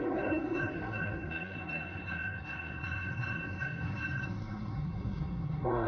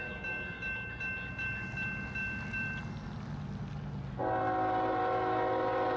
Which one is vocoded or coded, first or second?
first